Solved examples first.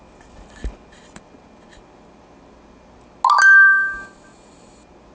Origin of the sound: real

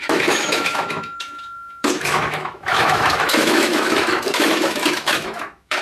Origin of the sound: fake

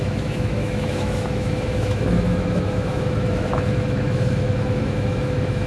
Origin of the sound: fake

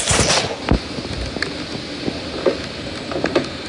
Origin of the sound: real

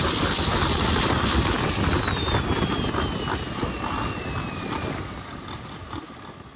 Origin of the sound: real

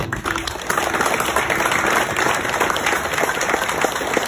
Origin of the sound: real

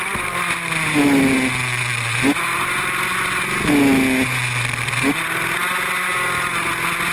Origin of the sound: real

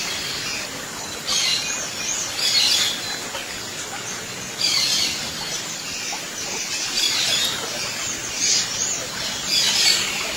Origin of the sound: real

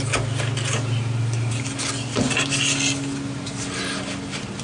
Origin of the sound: real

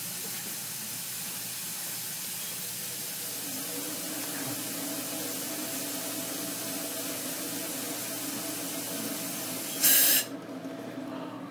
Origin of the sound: real